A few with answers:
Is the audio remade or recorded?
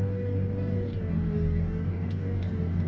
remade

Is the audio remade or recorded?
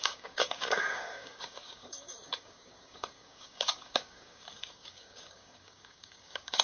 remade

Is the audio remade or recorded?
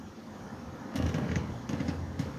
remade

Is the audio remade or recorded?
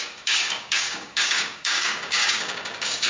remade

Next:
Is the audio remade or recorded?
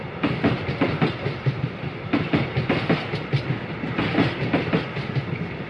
recorded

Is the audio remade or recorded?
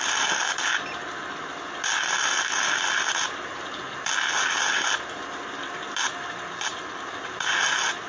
recorded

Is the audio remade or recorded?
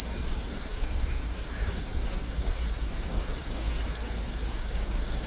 remade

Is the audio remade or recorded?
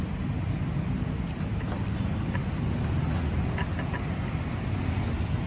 recorded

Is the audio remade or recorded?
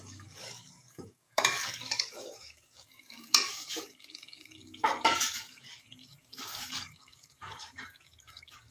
remade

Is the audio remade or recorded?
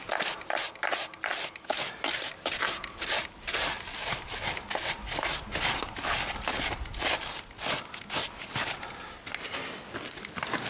recorded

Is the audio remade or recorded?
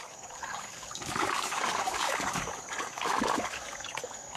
remade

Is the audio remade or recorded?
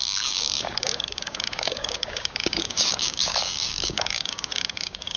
remade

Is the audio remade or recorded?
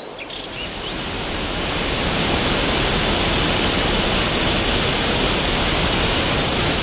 recorded